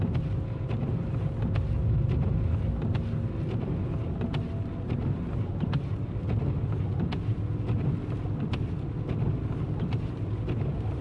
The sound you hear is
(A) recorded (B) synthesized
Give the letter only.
A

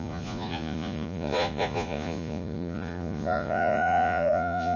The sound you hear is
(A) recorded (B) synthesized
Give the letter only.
B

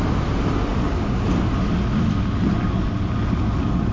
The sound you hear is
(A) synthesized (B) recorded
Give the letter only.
B